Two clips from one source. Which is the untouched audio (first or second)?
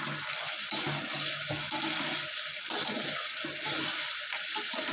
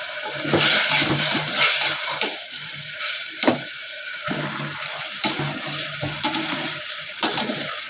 first